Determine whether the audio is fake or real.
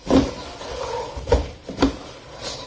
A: real